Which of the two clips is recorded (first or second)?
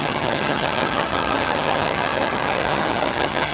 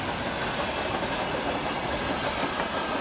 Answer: second